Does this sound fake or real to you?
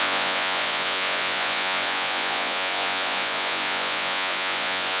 fake